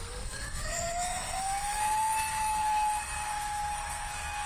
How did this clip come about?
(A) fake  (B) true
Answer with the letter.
A